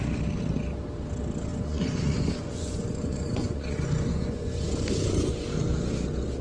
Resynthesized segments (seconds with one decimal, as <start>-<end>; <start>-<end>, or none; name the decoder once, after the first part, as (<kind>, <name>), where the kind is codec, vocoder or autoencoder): 1.5-5.3 (vocoder, Vocos)